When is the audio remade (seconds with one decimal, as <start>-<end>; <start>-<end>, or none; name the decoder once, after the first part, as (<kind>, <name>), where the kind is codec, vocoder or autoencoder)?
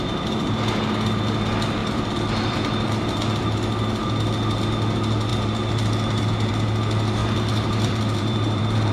1.8-3.1 (vocoder, BigVGAN v2); 7.2-8.9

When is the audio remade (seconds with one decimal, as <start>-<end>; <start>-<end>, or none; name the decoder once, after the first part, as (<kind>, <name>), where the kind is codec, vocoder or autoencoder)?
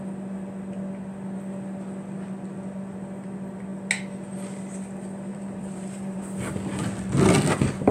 5.3-6.2 (vocoder, BigVGAN v2)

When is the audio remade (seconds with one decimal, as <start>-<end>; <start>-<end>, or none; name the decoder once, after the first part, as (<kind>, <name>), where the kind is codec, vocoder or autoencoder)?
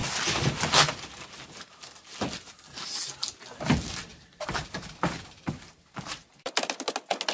4.1-6.3 (vocoder, BigVGAN v2)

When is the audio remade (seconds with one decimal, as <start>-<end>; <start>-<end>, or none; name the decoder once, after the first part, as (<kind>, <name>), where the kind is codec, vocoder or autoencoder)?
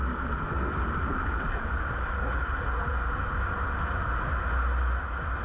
none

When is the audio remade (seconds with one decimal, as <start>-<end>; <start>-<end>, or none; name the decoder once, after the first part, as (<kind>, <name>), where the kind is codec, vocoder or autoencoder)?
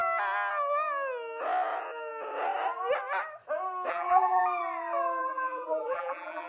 3.9-4.4 (vocoder, BigVGAN v2); 5.2-6.5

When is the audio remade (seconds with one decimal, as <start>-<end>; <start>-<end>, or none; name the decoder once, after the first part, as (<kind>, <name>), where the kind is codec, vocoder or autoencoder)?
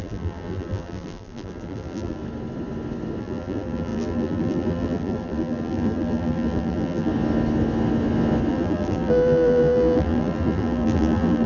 0.0-2.2 (vocoder, BigVGAN v2); 3.2-7.1; 8.5-11.5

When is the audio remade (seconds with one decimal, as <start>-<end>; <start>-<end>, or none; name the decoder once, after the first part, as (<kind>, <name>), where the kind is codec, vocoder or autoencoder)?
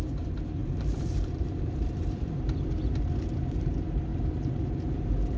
0.6-2.4 (vocoder, BigVGAN v2); 4.1-4.6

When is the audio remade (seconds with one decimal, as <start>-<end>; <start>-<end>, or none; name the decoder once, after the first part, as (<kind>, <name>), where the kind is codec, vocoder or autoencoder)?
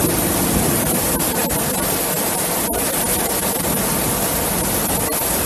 none